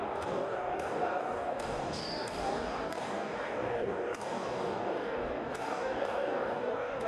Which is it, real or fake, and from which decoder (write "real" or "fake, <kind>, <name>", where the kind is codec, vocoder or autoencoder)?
fake, codec, DAC